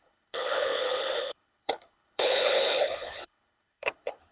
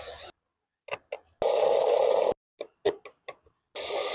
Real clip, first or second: second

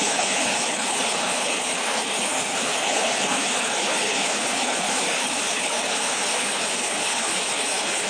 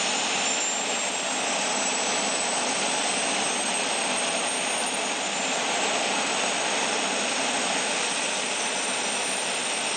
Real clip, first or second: second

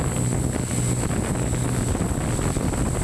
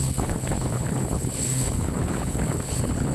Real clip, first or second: first